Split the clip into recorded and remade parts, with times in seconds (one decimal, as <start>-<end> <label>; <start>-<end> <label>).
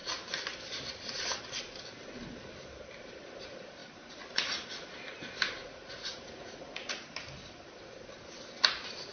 0.0-5.6 recorded; 5.6-7.0 remade; 7.0-9.1 recorded